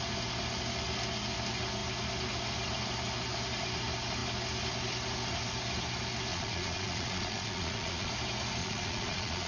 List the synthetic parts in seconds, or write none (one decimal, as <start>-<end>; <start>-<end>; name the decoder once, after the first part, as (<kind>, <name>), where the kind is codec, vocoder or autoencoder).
6.3-8.1 (vocoder, Vocos); 8.6-9.5